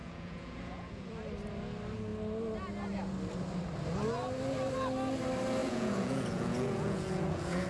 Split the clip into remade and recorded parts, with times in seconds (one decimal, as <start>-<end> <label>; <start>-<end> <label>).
0.0-1.1 remade; 1.1-5.6 recorded; 5.6-7.7 remade